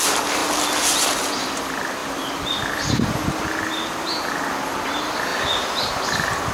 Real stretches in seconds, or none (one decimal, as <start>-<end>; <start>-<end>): 0.0-5.3; 5.9-6.5